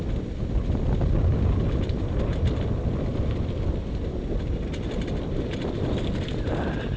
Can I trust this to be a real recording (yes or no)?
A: yes